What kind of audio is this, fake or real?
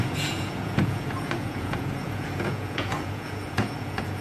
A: fake